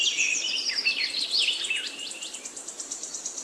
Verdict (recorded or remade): remade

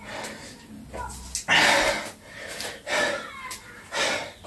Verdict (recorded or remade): recorded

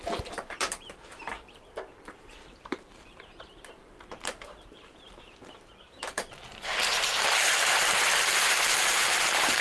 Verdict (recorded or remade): remade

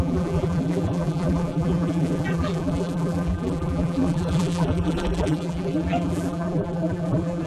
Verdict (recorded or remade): remade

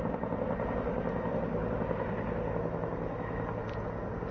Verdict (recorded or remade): recorded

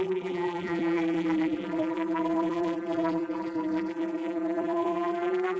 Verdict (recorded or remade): remade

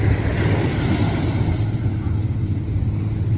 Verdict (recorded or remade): remade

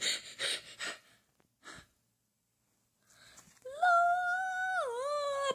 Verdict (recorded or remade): recorded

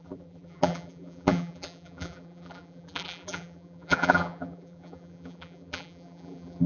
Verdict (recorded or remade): remade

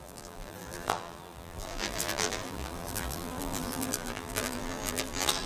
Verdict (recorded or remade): remade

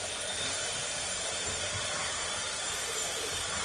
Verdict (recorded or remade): remade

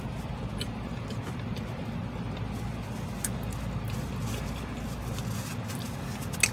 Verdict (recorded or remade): recorded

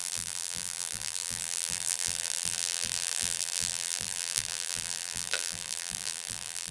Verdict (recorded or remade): remade